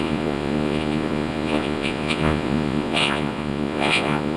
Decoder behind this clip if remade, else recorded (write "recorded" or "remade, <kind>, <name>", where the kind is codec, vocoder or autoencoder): remade, vocoder, Vocos